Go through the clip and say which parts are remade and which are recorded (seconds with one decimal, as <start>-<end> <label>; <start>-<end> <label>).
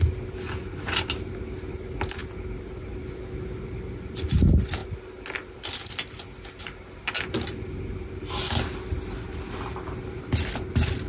0.0-11.1 recorded